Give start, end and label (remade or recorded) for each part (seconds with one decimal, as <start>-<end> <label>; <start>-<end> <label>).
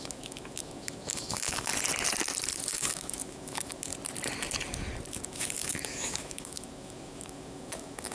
0.0-1.7 remade; 1.7-2.7 recorded; 2.7-3.9 remade; 3.9-5.1 recorded; 5.1-8.1 remade